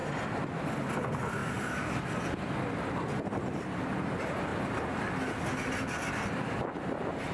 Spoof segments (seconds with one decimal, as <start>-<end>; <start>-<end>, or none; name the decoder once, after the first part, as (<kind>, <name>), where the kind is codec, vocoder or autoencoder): 1.4-2.1 (vocoder, BigVGAN v2)